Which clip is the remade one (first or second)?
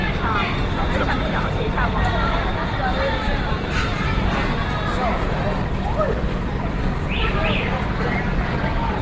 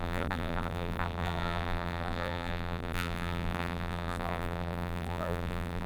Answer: second